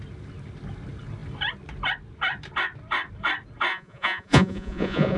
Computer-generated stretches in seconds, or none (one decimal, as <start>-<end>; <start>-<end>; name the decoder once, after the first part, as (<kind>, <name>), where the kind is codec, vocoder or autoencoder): 3.7-5.2 (vocoder, Vocos)